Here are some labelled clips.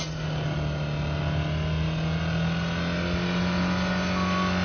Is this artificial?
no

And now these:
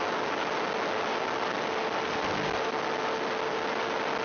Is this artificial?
no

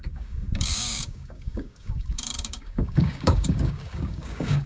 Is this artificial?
yes